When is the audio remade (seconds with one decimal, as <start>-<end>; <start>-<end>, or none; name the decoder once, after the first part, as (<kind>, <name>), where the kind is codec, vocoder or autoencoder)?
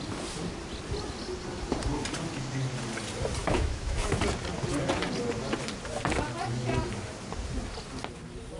3.4-4.2 (autoencoder, DAC-VAE)